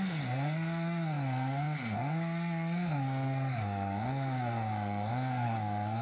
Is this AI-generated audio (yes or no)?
yes